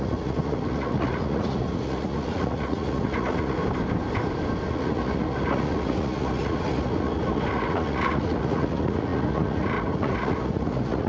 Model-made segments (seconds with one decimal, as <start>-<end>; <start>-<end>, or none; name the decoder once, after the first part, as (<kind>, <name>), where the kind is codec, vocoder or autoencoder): 0.0-3.6 (vocoder, Vocos); 4.7-11.1